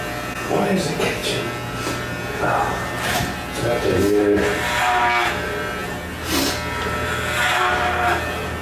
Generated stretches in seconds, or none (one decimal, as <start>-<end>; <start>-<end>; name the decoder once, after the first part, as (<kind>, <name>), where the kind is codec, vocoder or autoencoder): none